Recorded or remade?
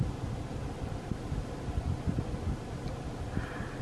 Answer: recorded